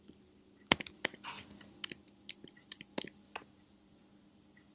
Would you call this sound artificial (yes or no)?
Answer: no